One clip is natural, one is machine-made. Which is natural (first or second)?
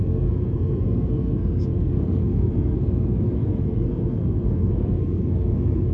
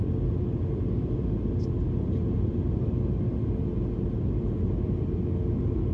second